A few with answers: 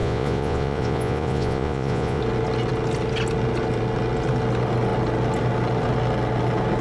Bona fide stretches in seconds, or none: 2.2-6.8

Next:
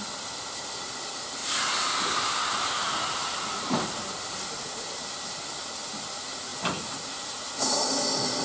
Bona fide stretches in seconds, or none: 0.0-1.4; 5.4-8.4

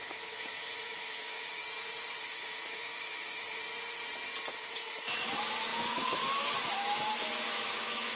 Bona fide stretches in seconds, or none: 1.6-2.2; 3.6-4.7

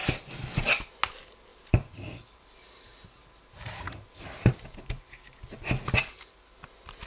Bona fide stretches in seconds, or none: 0.0-1.5; 5.4-7.1

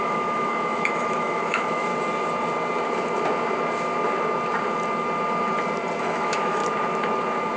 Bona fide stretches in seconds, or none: 1.9-6.0; 6.6-7.6

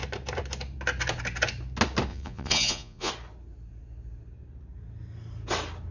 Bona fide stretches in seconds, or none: 0.0-2.1; 3.1-5.9

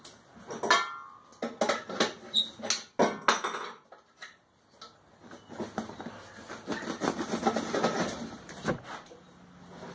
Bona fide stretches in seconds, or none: 0.0-9.9